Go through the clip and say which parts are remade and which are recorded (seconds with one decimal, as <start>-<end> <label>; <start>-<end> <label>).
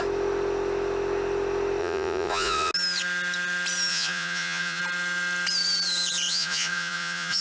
0.0-1.8 recorded; 1.8-2.7 remade; 2.7-3.9 recorded; 3.9-4.8 remade; 4.8-6.3 recorded; 6.3-7.4 remade